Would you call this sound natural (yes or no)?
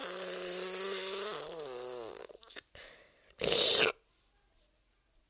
yes